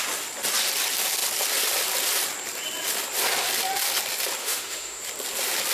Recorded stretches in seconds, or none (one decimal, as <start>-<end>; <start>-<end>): 0.0-4.4; 5.0-5.7